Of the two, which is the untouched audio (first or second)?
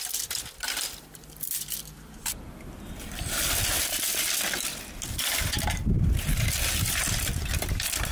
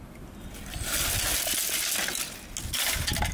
second